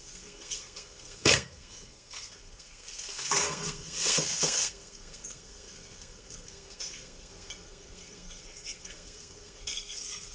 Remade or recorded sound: remade